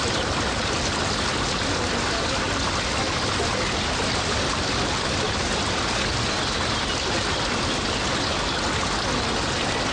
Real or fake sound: real